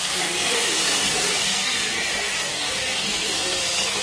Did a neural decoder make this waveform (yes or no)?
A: yes